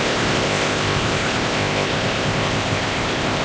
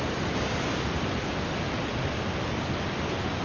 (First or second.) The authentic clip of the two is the second